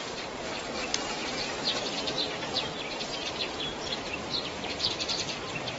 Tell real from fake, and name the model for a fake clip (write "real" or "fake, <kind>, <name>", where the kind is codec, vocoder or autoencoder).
fake, vocoder, BigVGAN v2